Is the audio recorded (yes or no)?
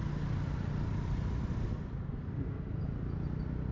yes